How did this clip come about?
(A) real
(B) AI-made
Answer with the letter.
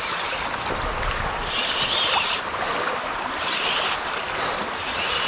A